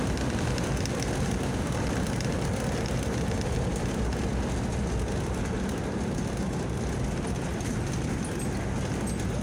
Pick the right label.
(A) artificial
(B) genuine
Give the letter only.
B